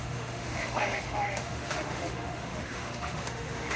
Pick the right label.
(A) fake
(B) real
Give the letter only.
A